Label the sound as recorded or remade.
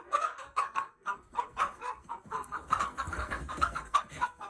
remade